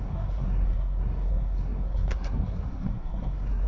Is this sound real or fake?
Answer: fake